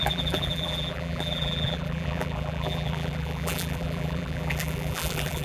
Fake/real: fake